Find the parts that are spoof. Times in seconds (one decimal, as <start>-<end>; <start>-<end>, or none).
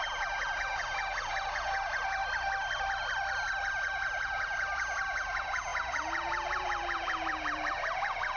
0.0-2.2; 3.6-8.4